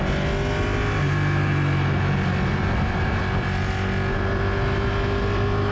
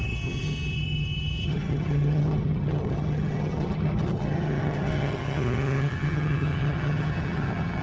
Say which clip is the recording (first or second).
first